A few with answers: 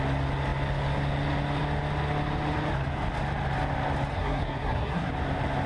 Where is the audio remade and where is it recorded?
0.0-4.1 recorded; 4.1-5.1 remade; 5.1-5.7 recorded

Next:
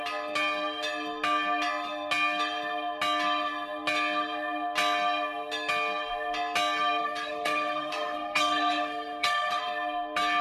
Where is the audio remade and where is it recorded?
0.0-7.0 recorded; 7.0-9.6 remade; 9.6-10.4 recorded

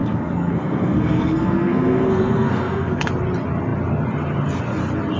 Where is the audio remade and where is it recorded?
0.0-3.1 remade; 3.1-5.2 recorded

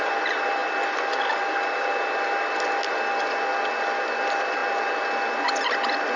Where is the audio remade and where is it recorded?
0.0-6.2 recorded

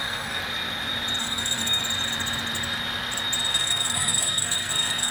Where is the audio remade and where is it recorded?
0.0-0.4 remade; 0.4-1.2 recorded; 1.2-1.8 remade; 1.8-3.5 recorded; 3.5-5.1 remade

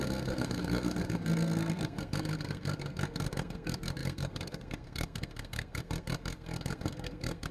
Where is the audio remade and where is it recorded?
0.0-7.5 remade

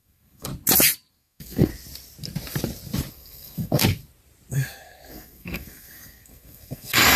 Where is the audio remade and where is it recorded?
0.0-0.5 remade; 0.5-1.1 recorded; 1.1-1.7 remade; 1.7-3.1 recorded; 3.1-3.8 remade; 3.8-4.5 recorded; 4.5-7.2 remade